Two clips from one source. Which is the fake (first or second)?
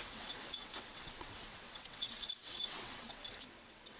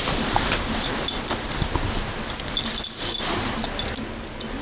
first